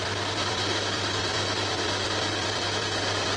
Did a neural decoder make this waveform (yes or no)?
yes